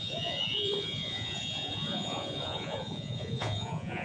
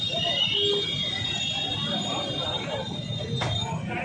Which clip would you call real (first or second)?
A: second